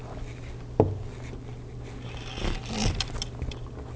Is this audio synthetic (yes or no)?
no